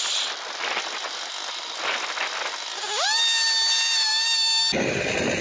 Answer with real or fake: real